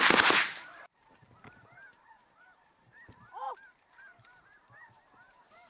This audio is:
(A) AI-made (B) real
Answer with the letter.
A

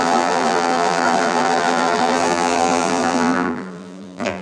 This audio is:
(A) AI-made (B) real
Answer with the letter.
A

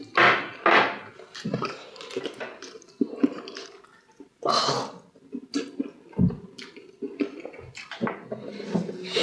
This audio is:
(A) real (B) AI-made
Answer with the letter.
A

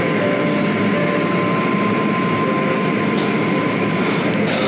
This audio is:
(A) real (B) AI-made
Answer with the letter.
A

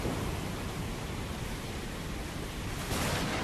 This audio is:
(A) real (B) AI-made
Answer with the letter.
A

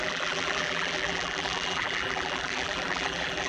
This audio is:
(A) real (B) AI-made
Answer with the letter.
B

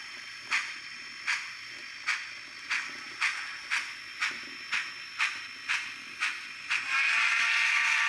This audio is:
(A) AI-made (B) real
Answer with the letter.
B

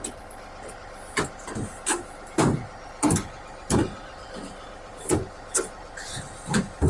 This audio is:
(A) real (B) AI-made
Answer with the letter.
B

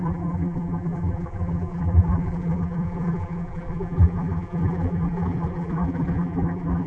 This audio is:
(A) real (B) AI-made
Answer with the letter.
B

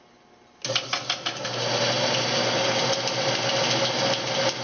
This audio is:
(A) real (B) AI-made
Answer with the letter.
A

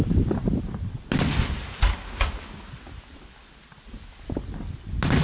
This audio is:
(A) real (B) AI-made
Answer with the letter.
A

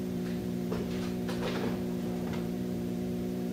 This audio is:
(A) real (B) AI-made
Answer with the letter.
B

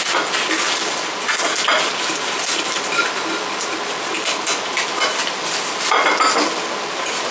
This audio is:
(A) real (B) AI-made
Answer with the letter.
A